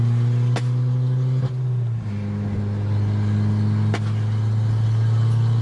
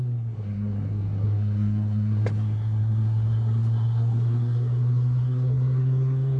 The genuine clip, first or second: first